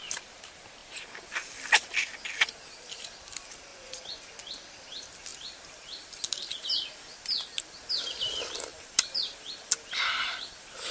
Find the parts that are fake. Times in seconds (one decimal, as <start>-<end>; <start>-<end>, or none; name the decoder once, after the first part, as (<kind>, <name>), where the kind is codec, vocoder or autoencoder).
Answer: 3.7-4.2 (vocoder, Vocos)